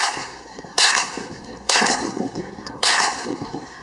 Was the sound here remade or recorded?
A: remade